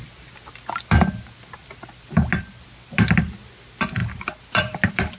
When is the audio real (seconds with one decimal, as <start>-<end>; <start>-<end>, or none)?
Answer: 0.0-1.6; 2.2-4.0